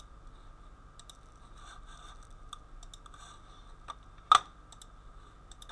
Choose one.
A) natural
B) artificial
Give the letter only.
A